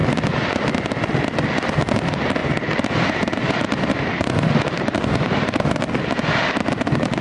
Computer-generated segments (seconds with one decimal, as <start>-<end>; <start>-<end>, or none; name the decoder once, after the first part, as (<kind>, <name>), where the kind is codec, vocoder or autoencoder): 2.4-5.8 (vocoder, BigVGAN v2)